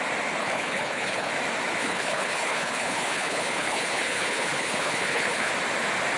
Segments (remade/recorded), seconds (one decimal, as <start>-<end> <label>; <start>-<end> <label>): 0.0-0.4 recorded; 0.4-1.3 remade; 1.3-1.8 recorded; 1.8-5.5 remade; 5.5-6.2 recorded